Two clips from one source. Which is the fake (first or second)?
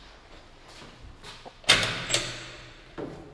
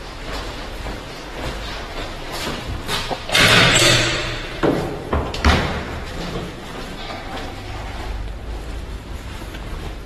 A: second